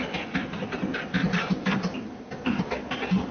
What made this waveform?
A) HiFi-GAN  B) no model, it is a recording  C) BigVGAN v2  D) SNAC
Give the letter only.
B